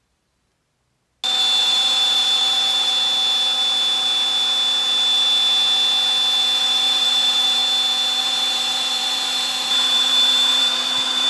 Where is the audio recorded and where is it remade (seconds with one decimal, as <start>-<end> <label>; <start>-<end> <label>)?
0.0-0.5 remade; 0.5-1.6 recorded; 1.6-2.9 remade; 2.9-6.6 recorded; 6.6-7.6 remade; 7.6-8.2 recorded; 8.2-11.3 remade